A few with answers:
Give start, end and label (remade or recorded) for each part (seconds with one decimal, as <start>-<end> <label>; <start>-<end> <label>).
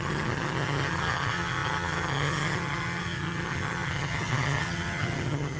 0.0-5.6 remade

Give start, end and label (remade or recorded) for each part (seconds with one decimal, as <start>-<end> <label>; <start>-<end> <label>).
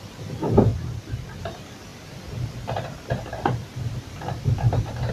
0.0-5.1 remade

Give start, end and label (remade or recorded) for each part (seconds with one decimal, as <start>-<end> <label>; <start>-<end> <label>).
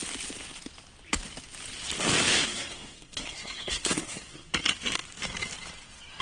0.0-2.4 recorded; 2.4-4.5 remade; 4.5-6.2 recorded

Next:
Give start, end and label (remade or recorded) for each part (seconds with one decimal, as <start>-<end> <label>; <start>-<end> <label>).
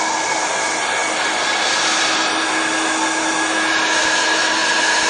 0.0-5.1 recorded